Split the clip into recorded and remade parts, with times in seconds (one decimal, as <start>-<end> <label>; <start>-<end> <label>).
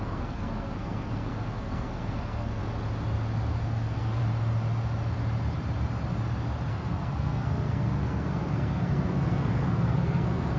0.0-2.6 remade; 2.6-3.6 recorded; 3.6-4.2 remade; 4.2-6.7 recorded; 6.7-10.6 remade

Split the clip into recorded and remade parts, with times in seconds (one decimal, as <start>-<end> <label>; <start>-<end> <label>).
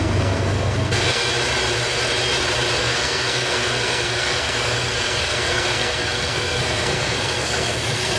0.0-1.3 remade; 1.3-2.8 recorded; 2.8-8.2 remade